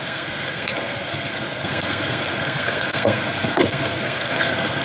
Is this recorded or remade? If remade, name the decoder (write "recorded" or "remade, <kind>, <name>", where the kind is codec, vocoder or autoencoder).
remade, codec, SNAC